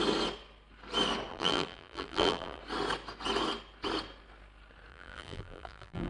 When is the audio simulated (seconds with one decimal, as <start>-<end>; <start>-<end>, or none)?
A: 1.3-2.6; 4.9-6.1